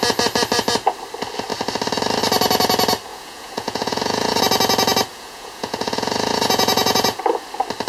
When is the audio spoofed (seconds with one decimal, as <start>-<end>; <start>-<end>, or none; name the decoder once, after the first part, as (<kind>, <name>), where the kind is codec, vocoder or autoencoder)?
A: 3.1-4.4 (vocoder, Vocos); 5.1-7.2